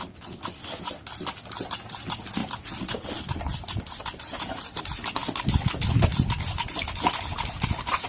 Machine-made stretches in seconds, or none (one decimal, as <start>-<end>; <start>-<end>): none